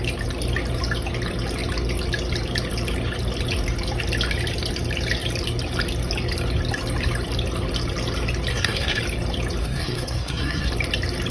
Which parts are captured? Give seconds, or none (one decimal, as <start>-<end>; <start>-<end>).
0.0-8.5; 9.0-9.6; 10.7-11.3